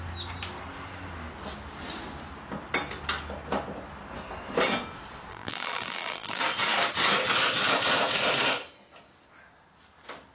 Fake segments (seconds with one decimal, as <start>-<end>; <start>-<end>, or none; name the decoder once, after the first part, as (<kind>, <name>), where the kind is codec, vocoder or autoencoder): 5.3-6.4 (vocoder, BigVGAN v2)